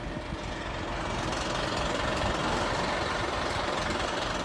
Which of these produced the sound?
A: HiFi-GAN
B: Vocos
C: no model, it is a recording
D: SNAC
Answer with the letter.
C